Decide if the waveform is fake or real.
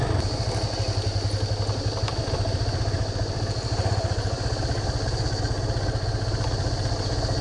real